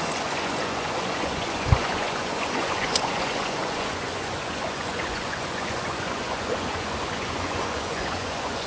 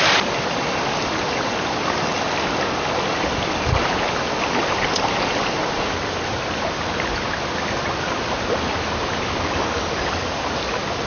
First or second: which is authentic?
second